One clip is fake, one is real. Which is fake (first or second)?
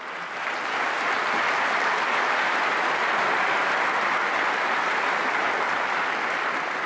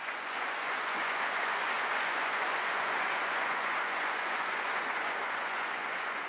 second